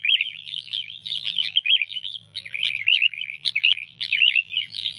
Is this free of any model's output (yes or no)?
no